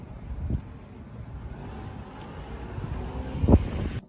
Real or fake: real